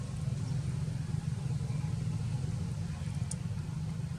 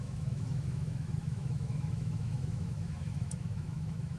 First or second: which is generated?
second